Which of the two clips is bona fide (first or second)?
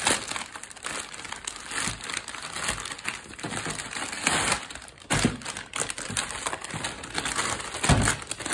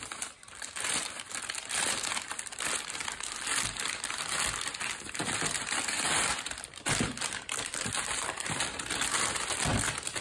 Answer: first